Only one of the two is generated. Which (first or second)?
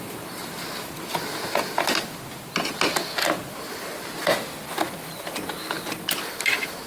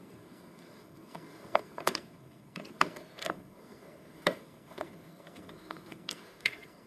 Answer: second